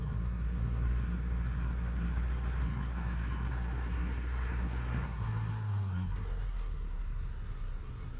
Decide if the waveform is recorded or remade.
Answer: remade